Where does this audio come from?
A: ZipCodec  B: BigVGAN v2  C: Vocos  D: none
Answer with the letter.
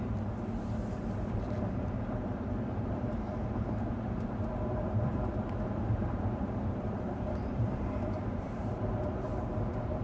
B